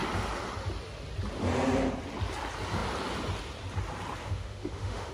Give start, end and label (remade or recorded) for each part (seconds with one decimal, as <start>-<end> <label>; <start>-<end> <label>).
0.0-4.2 recorded; 4.2-5.1 remade